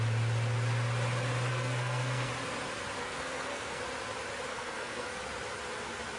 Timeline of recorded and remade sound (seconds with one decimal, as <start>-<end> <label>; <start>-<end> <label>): 0.0-1.5 recorded; 1.5-2.3 remade; 2.3-3.0 recorded; 3.0-3.8 remade; 3.8-4.5 recorded; 4.5-5.2 remade; 5.2-6.2 recorded